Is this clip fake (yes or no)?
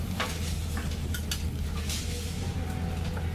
no